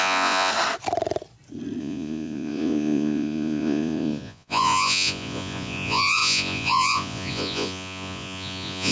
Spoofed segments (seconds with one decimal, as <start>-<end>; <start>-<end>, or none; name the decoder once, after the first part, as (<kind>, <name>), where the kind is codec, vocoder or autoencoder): 0.0-0.5 (vocoder, Vocos); 1.8-8.9